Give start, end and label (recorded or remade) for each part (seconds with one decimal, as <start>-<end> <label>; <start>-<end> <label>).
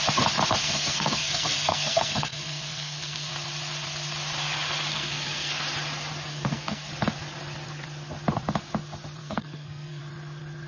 0.0-0.6 recorded; 0.6-3.3 remade; 3.3-4.9 recorded; 4.9-5.5 remade; 5.5-6.3 recorded; 6.3-6.9 remade; 6.9-9.2 recorded; 9.2-10.0 remade; 10.0-10.7 recorded